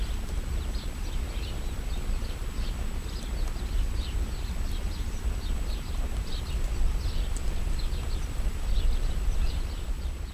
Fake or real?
fake